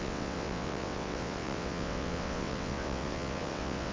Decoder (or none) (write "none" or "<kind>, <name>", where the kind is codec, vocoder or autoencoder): vocoder, WaveNeXt